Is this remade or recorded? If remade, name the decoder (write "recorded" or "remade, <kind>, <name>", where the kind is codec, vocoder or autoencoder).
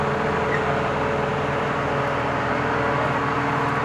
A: recorded